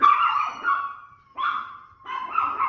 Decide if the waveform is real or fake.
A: real